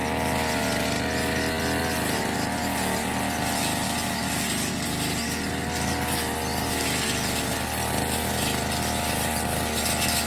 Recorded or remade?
recorded